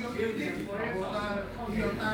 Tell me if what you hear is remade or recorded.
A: remade